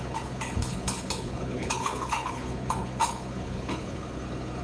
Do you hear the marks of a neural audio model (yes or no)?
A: yes